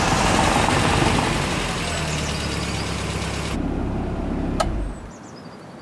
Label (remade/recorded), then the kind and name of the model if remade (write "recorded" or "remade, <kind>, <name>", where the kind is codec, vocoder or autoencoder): recorded